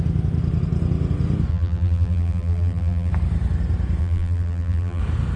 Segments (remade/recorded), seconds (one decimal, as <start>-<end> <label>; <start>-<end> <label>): 0.0-1.5 recorded; 1.5-3.1 remade; 3.1-4.0 recorded; 4.0-5.0 remade; 5.0-5.4 recorded